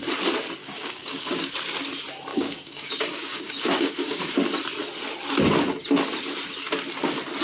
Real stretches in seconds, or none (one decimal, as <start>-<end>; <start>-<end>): 0.0-0.6; 1.5-2.3; 4.2-7.4